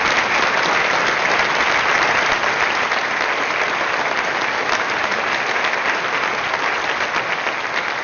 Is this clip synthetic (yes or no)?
no